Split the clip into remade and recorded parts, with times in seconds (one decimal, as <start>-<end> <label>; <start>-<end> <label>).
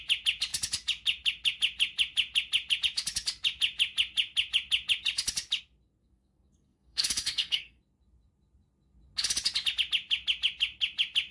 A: 0.0-6.0 recorded; 6.0-7.8 remade; 7.8-11.3 recorded